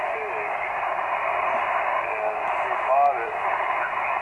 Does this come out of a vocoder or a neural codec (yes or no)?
no